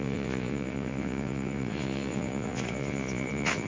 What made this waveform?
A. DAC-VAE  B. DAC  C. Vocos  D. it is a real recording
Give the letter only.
C